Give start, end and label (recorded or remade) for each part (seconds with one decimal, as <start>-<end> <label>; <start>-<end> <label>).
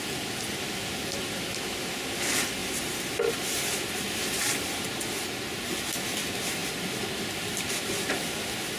0.0-2.6 recorded; 2.6-5.2 remade; 5.2-6.6 recorded; 6.6-8.1 remade; 8.1-8.8 recorded